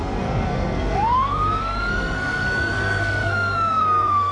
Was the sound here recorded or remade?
remade